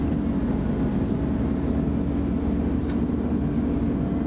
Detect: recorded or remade recorded